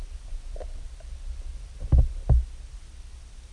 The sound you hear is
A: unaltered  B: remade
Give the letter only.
A